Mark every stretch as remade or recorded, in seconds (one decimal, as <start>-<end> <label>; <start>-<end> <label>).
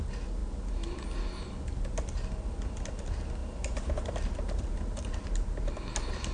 0.0-3.4 recorded; 3.4-5.0 remade; 5.0-6.3 recorded